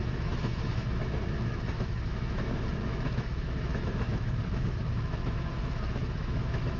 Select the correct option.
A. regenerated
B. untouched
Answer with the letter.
A